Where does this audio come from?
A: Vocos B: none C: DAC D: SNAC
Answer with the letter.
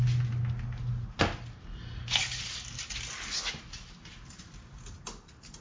B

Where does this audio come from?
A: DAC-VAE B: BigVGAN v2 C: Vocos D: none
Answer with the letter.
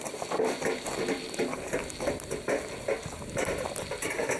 D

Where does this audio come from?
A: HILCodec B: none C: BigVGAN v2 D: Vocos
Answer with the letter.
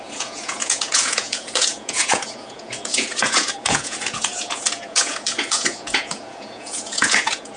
D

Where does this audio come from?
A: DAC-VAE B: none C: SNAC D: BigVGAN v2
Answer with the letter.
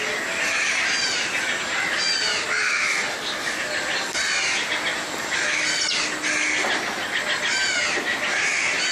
B